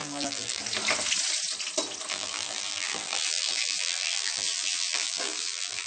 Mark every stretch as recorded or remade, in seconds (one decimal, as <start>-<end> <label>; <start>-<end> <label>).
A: 0.0-0.6 remade; 0.6-2.1 recorded; 2.1-5.9 remade